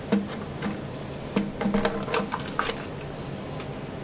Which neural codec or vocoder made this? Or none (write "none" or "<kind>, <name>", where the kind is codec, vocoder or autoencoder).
none